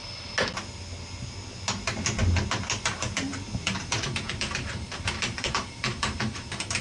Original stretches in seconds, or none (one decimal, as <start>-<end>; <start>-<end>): 0.0-2.8